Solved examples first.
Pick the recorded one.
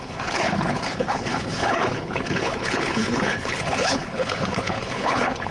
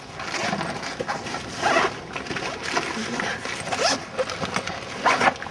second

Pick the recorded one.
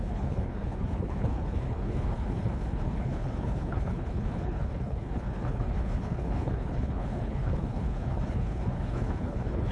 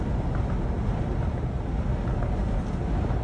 second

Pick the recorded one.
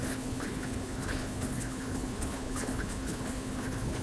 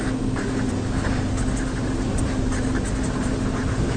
second